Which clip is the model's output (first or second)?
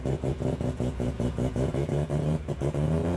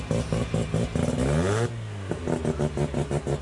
first